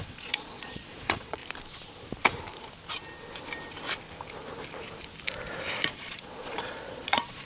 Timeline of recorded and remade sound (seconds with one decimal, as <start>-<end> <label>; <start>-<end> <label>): 0.0-1.4 remade; 1.4-5.9 recorded; 5.9-7.5 remade